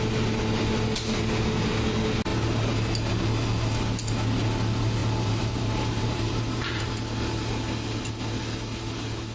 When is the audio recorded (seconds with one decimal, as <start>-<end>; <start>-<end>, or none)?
0.0-5.0; 6.9-9.3